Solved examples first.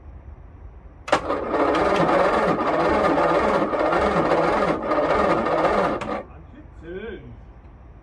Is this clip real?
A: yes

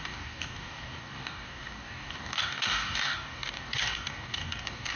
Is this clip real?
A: no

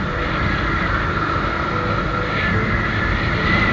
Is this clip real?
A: yes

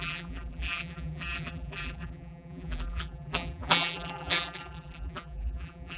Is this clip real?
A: no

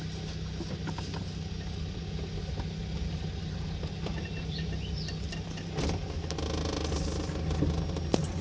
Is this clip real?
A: yes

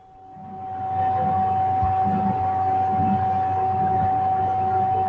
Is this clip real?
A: yes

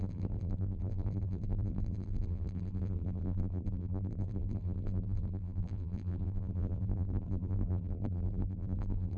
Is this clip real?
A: no